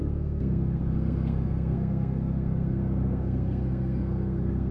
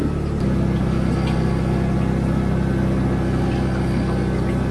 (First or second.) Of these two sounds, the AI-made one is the first